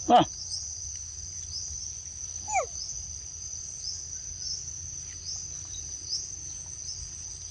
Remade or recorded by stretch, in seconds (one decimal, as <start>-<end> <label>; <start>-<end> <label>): 0.0-7.5 recorded